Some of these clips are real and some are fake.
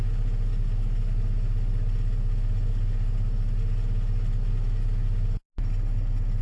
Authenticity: real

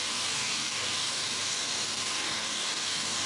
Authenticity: fake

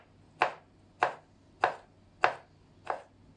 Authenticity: real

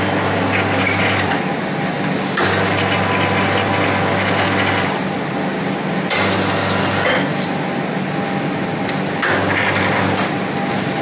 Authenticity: real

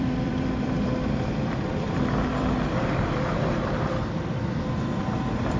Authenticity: fake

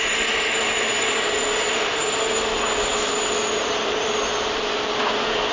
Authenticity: real